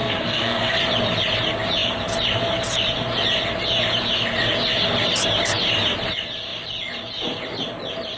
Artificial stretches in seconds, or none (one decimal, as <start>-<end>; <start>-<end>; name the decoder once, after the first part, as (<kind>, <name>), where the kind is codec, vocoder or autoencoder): 0.0-0.8 (codec, SNAC)